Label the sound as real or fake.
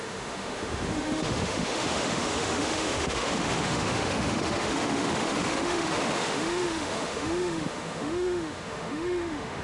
fake